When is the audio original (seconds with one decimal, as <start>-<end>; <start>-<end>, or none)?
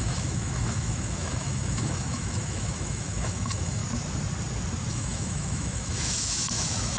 3.8-4.9